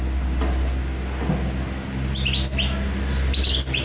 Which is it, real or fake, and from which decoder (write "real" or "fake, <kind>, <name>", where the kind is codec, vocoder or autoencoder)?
real